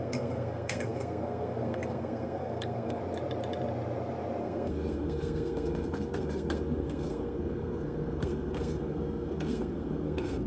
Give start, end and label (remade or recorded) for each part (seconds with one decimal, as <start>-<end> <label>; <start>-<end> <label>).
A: 0.0-3.0 remade; 3.0-4.4 recorded; 4.4-10.5 remade